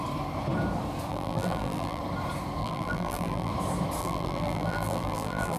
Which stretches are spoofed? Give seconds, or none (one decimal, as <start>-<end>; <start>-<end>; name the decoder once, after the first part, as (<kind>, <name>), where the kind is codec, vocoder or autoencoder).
1.1-2.0 (vocoder, BigVGAN v2); 2.6-3.5; 4.0-5.6